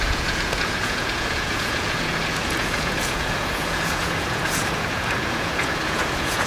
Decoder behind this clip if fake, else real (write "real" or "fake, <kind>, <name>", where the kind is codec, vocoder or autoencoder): fake, vocoder, Vocos